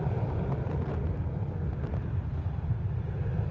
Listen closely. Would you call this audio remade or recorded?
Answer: recorded